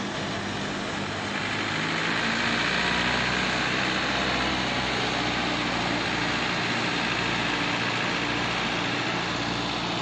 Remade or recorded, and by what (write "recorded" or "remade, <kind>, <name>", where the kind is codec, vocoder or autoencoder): recorded